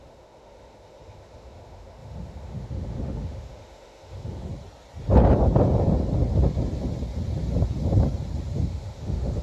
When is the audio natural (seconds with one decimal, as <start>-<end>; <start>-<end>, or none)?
4.5-8.7